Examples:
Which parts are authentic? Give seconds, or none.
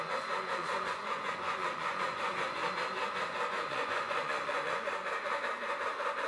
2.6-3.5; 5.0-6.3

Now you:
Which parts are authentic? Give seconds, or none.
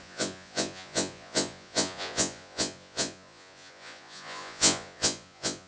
none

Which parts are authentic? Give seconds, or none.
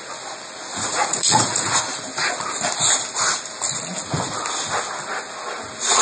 0.0-0.7; 1.8-6.0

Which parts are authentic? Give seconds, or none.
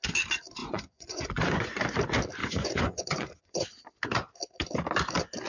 0.0-0.6; 1.8-2.4; 3.7-5.5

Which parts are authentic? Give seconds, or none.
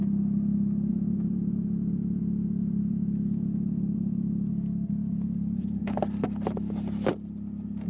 0.0-0.9; 4.5-5.0; 6.0-7.9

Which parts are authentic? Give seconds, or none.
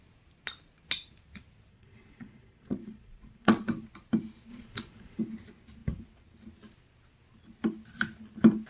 0.0-1.7; 3.7-4.5; 5.2-8.7